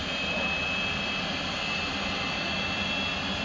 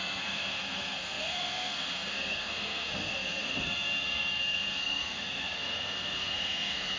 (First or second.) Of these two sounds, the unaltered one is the first